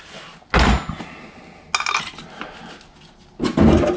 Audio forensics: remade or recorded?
recorded